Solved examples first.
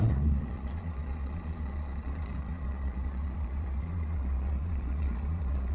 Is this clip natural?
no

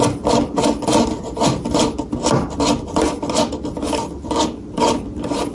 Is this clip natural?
yes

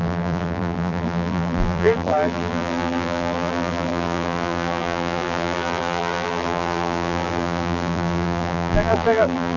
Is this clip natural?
no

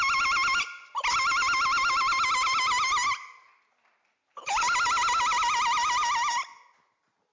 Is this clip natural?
yes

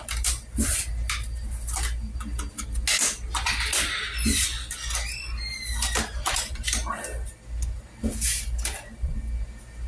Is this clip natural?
yes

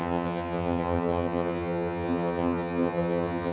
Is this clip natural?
no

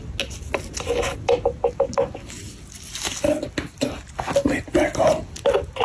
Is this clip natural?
yes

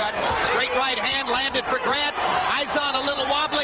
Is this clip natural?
no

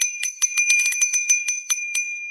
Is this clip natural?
no